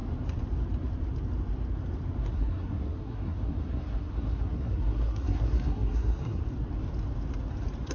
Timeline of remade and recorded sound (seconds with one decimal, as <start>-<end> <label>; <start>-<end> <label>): 0.0-2.2 recorded; 2.2-6.4 remade; 6.4-7.9 recorded